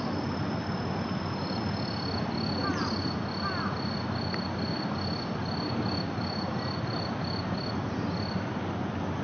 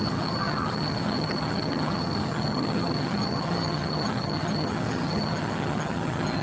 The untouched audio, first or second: first